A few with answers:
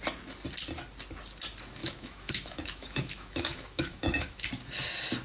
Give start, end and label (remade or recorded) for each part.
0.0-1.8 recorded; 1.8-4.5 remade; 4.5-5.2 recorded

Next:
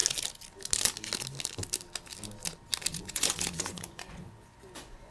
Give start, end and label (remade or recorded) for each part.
0.0-2.9 recorded; 2.9-5.1 remade

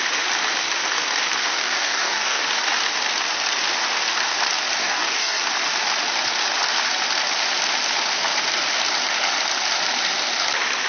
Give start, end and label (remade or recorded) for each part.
0.0-1.4 recorded; 1.4-2.4 remade; 2.4-4.8 recorded; 4.8-5.4 remade; 5.4-10.9 recorded

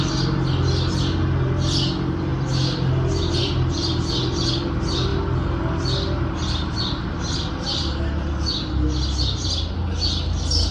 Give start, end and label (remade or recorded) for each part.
0.0-10.7 recorded

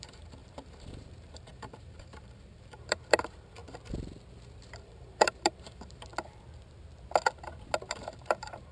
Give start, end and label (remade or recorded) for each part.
0.0-3.6 remade; 3.6-4.6 recorded; 4.6-6.1 remade; 6.1-7.9 recorded; 7.9-8.7 remade

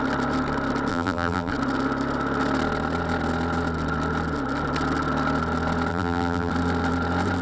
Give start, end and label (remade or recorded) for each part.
0.0-0.9 recorded; 0.9-1.5 remade; 1.5-5.9 recorded; 5.9-6.5 remade; 6.5-7.4 recorded

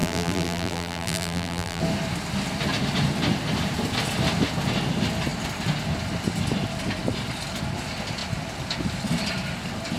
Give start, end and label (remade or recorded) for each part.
0.0-1.8 remade; 1.8-10.0 recorded

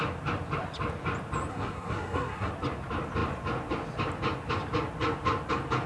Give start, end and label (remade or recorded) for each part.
0.0-1.5 recorded; 1.5-2.5 remade; 2.5-5.9 recorded